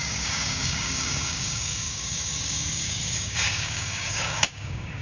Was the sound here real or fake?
fake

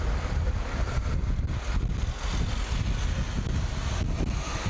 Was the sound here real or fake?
real